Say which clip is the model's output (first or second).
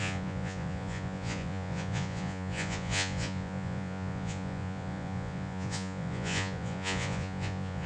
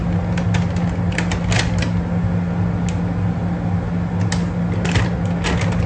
first